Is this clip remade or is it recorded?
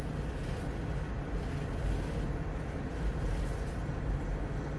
recorded